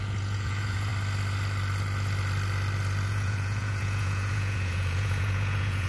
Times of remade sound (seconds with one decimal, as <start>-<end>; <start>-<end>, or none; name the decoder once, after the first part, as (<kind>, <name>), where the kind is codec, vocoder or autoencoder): 0.0-0.9 (vocoder, Vocos); 3.1-5.9